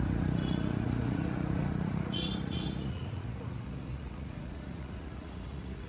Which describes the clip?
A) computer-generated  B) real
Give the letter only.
A